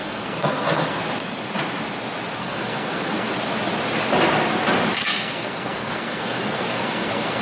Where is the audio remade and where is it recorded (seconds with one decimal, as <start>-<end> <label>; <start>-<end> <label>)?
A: 0.0-1.0 remade; 1.0-2.4 recorded; 2.4-3.3 remade; 3.3-5.0 recorded; 5.0-7.4 remade

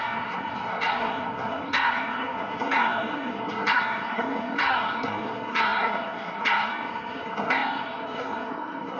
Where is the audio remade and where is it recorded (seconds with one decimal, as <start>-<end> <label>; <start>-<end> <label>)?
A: 0.0-9.0 remade

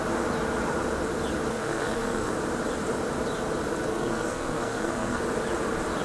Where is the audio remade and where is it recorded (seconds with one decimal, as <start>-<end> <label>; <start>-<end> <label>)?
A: 0.0-1.5 recorded; 1.5-2.3 remade; 2.3-3.9 recorded; 3.9-5.2 remade; 5.2-6.0 recorded

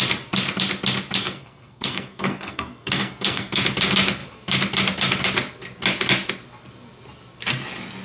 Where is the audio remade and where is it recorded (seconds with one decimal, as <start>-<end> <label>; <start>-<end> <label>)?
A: 0.0-1.2 recorded; 1.2-3.6 remade; 3.6-8.0 recorded

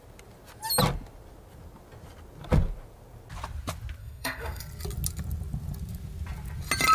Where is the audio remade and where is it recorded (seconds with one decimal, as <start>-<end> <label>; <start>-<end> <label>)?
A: 0.0-4.0 recorded; 4.0-4.6 remade; 4.6-6.9 recorded

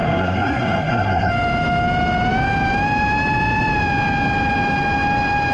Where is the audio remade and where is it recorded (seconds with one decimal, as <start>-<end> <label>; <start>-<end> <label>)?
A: 0.0-1.3 remade; 1.3-5.5 recorded

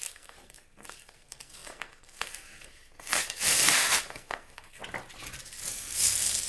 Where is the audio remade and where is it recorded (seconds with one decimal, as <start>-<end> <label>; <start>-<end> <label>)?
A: 0.0-4.8 remade; 4.8-5.7 recorded; 5.7-6.5 remade